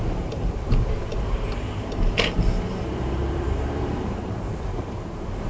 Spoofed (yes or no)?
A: yes